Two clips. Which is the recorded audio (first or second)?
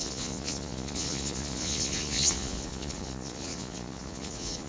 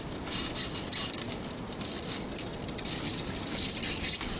second